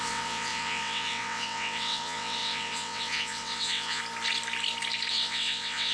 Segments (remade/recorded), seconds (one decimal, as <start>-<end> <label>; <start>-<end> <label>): 0.0-4.0 remade; 4.0-5.1 recorded; 5.1-5.9 remade